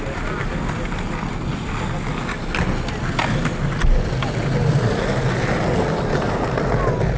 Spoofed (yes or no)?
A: no